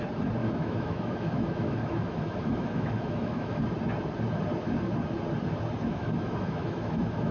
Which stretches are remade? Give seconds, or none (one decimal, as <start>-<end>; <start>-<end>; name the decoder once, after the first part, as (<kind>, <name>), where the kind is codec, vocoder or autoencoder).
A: 0.4-3.6 (autoencoder, DAC-VAE); 5.9-7.3